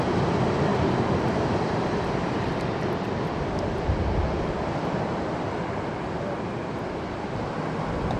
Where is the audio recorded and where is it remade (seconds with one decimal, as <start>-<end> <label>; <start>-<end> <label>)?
0.0-8.2 remade